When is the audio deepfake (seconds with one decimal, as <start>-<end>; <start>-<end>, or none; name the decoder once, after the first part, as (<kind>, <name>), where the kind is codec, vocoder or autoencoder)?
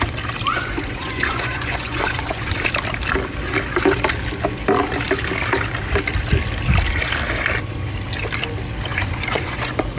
0.5-2.5 (vocoder, Vocos); 8.9-10.0